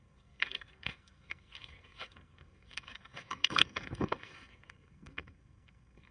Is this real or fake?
fake